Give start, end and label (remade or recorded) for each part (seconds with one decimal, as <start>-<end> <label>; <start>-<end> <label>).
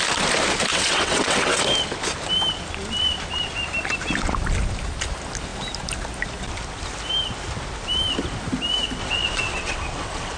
0.0-0.7 recorded; 0.7-1.6 remade; 1.6-9.0 recorded; 9.0-10.4 remade